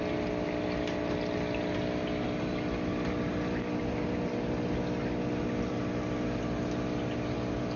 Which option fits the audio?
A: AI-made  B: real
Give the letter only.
B